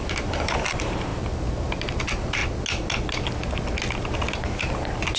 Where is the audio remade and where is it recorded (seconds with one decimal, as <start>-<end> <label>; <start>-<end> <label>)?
0.0-2.4 remade; 2.4-4.0 recorded; 4.0-5.2 remade